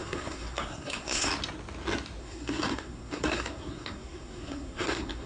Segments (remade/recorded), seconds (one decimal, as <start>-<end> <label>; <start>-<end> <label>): 0.0-1.3 remade; 1.3-2.2 recorded; 2.2-5.3 remade